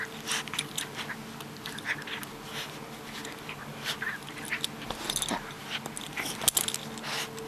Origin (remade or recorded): recorded